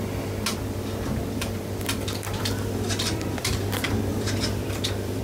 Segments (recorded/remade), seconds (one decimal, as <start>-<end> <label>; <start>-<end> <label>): 0.0-0.5 recorded; 0.5-3.6 remade; 3.6-4.1 recorded; 4.1-5.2 remade